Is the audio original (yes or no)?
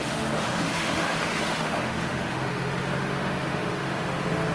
no